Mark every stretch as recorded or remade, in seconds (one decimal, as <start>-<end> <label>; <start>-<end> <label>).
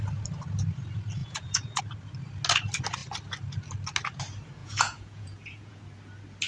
0.0-1.2 recorded; 1.2-1.8 remade; 1.8-4.6 recorded; 4.6-5.8 remade; 5.8-6.5 recorded